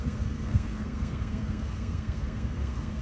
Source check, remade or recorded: remade